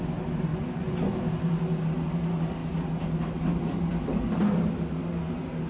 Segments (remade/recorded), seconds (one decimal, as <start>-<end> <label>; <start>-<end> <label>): 0.0-0.5 recorded; 0.5-1.1 remade; 1.1-5.7 recorded